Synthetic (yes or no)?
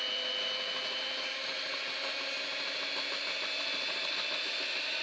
no